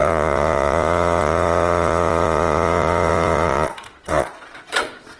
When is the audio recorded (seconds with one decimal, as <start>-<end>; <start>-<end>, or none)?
none